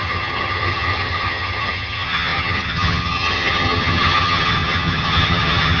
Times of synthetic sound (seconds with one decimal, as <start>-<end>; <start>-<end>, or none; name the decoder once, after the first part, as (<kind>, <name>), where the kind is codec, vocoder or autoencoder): 0.0-5.8 (vocoder, HiFi-GAN)